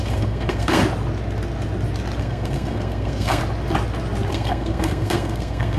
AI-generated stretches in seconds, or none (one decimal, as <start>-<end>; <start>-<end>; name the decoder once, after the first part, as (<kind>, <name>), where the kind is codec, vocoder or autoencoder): 0.0-0.8 (codec, SNAC); 2.2-3.4; 4.3-5.8